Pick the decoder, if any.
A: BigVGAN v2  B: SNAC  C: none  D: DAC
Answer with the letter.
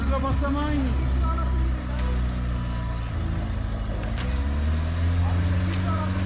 C